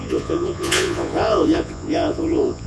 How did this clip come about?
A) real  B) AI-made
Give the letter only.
B